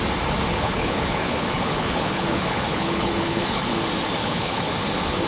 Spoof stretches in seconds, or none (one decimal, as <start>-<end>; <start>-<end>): 0.5-3.7; 4.2-4.7